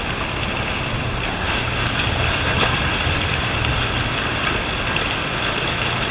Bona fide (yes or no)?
no